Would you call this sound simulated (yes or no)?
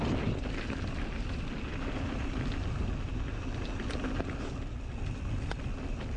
no